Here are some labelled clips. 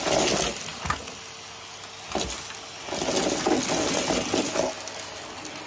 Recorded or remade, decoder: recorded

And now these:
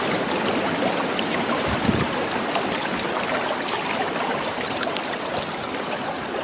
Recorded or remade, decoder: remade, vocoder, BigVGAN v2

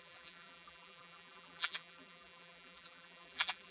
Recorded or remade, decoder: remade, vocoder, BigVGAN v2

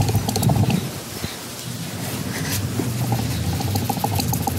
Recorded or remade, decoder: recorded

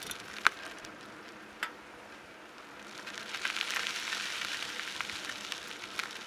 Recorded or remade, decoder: recorded